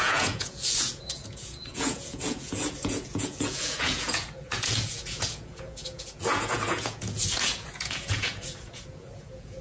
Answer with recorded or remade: remade